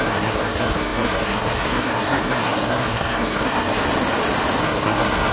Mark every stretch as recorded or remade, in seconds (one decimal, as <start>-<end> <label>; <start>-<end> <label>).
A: 0.0-3.8 remade; 3.8-4.6 recorded; 4.6-5.3 remade